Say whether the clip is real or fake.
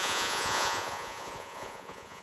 fake